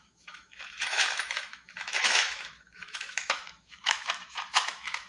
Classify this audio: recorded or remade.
remade